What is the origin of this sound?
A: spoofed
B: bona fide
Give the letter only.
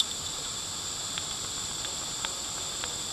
B